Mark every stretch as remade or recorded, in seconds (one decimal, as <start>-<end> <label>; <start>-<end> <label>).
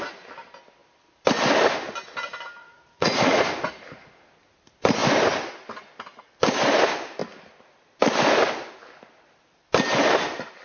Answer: 0.0-2.6 recorded; 2.6-3.4 remade; 3.4-10.6 recorded